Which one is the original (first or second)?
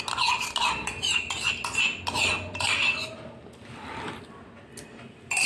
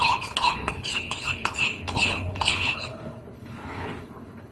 first